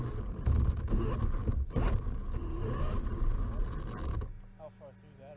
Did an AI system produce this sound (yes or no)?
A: no